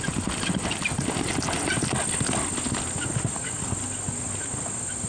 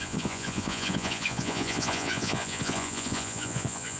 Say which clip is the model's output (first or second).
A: second